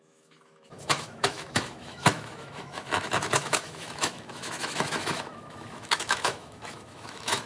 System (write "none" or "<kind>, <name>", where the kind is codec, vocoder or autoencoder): autoencoder, DAC-VAE